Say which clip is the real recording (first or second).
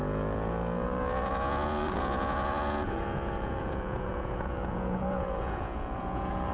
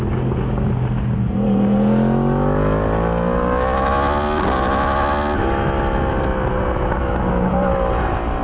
second